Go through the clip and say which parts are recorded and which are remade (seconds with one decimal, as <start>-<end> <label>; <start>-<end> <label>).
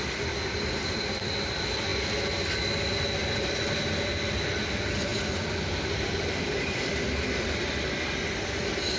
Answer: 0.0-3.2 recorded; 3.2-3.7 remade; 3.7-5.1 recorded; 5.1-7.7 remade; 7.7-9.0 recorded